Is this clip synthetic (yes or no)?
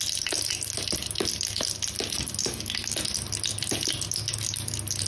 no